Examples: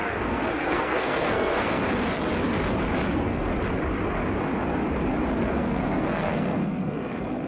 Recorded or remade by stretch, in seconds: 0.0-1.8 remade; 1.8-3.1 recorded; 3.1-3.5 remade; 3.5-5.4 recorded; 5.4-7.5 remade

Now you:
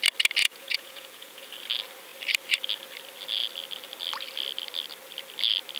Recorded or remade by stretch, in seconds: 0.0-0.4 recorded; 0.4-1.5 remade; 1.5-5.8 recorded

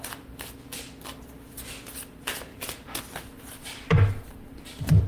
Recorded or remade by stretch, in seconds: 0.0-2.5 recorded; 2.5-3.0 remade; 3.0-3.6 recorded; 3.6-4.2 remade; 4.2-5.1 recorded

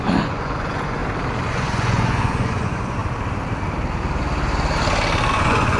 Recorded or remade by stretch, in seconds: 0.0-1.0 remade; 1.0-1.5 recorded; 1.5-3.0 remade; 3.0-5.3 recorded; 5.3-5.8 remade

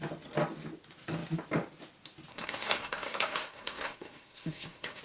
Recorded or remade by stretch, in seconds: 0.0-2.3 recorded; 2.3-5.0 remade

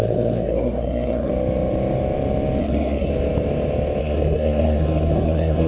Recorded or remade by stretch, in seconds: 0.0-1.3 remade; 1.3-2.6 recorded; 2.6-3.1 remade; 3.1-4.0 recorded; 4.0-5.7 remade

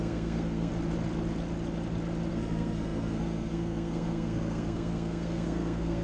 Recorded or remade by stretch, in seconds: 0.0-0.7 remade; 0.7-2.3 recorded; 2.3-6.0 remade